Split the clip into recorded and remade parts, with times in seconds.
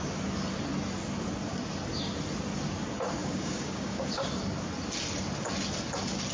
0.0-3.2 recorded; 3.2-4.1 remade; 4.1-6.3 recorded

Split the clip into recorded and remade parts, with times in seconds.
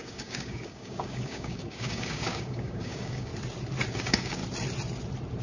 0.0-3.3 remade; 3.3-3.9 recorded; 3.9-4.4 remade; 4.4-5.4 recorded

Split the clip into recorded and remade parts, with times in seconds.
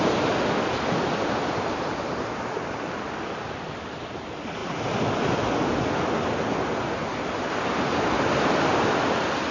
0.0-9.5 recorded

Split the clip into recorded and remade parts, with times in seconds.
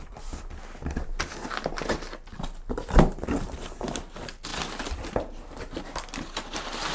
0.0-6.9 recorded